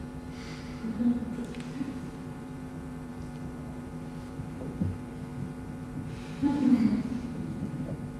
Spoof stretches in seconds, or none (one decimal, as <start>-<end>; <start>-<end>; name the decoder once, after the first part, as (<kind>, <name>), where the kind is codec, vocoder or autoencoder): 0.0-8.2 (vocoder, BigVGAN v2)